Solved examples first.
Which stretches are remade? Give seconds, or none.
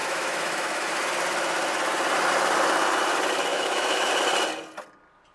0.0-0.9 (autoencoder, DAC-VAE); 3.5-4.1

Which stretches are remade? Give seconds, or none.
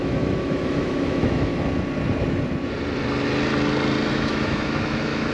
0.0-1.5 (autoencoder, DAC-VAE); 4.1-5.3